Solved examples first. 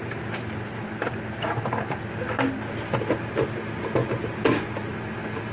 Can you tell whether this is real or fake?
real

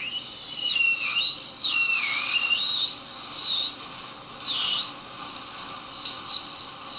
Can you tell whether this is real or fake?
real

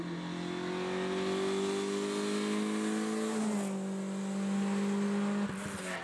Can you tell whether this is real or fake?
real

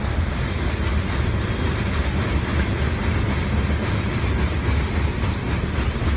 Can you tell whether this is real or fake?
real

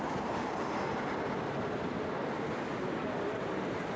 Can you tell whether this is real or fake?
real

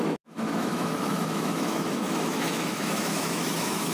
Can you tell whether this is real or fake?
fake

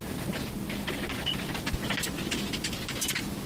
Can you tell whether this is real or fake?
real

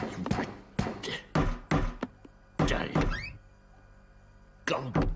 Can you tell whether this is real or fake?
real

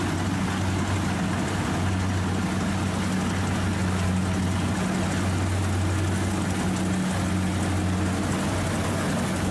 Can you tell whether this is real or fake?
real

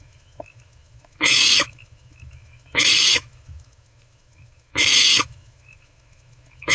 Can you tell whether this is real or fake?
fake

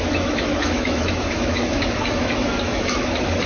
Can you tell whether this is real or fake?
fake